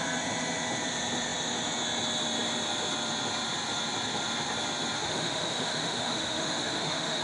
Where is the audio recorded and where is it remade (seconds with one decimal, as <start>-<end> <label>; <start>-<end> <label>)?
0.0-5.0 recorded; 5.0-7.2 remade